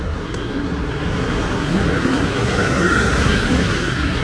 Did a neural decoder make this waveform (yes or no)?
yes